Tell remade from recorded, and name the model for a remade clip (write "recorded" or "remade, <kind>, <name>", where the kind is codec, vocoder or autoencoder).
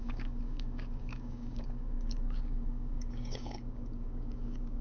remade, codec, DAC